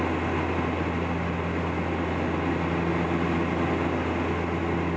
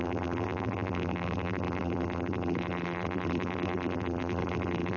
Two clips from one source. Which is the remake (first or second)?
second